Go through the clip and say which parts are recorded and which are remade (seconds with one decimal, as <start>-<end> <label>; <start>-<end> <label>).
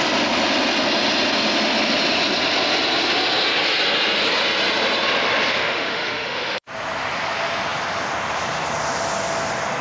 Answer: 0.0-5.5 recorded; 5.5-6.6 remade; 6.6-9.8 recorded